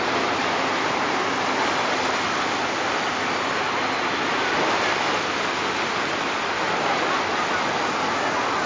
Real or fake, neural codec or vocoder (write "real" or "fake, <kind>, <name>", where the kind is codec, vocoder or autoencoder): real